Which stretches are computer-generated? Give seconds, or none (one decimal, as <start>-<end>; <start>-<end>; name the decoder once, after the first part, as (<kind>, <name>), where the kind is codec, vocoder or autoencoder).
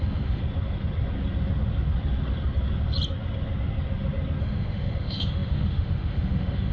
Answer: 0.0-0.4 (autoencoder, DAC-VAE); 4.4-6.7